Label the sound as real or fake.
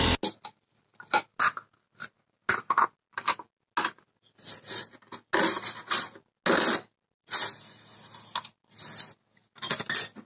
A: real